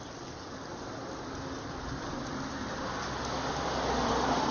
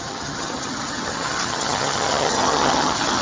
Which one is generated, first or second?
second